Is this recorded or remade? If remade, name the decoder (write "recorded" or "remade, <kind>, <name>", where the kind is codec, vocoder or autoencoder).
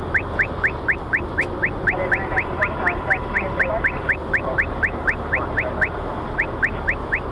recorded